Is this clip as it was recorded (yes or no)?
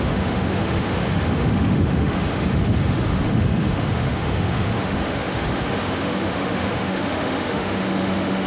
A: no